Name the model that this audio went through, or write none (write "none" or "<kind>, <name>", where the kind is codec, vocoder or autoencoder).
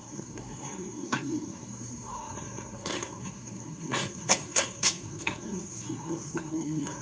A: codec, SNAC